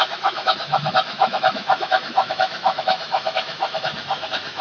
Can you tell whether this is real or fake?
fake